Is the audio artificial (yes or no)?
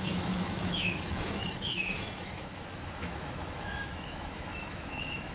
yes